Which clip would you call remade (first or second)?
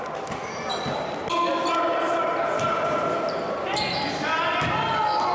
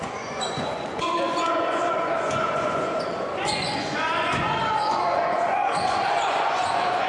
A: second